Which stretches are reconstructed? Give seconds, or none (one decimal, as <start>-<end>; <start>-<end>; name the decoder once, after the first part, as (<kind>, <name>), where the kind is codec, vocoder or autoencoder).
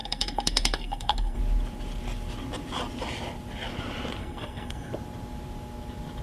0.0-1.4 (codec, SNAC); 4.2-4.9